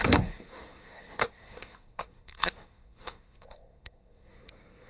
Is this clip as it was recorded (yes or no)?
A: no